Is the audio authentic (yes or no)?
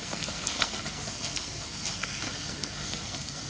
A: no